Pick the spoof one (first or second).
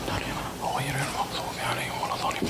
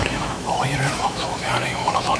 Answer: second